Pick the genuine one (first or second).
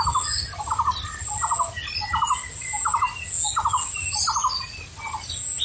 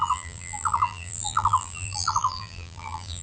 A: first